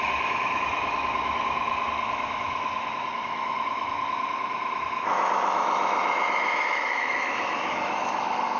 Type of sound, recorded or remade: remade